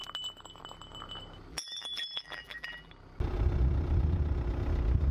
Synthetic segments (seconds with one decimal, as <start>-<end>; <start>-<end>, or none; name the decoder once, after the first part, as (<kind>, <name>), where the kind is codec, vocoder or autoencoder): 1.5-2.9 (vocoder, BigVGAN v2)